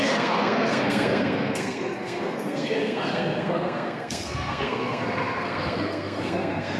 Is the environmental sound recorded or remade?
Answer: remade